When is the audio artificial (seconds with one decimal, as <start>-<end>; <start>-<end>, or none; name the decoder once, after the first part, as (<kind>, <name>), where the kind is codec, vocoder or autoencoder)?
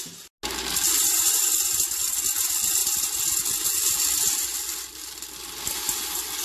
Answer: none